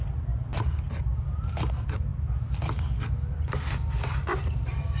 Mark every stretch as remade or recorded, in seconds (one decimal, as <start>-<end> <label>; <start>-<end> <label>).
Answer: 0.0-5.0 recorded